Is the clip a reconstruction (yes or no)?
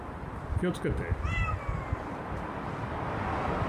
no